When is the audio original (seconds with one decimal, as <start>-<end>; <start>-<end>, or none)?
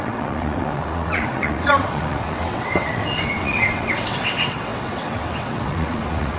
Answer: none